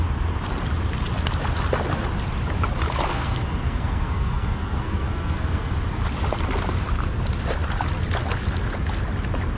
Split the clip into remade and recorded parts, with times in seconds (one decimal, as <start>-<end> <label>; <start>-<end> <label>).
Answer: 0.0-3.1 recorded; 3.1-5.7 remade; 5.7-9.6 recorded